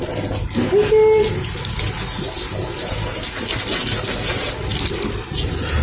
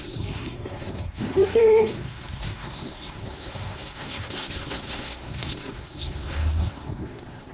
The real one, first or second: first